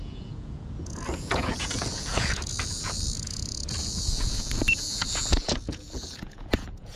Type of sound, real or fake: fake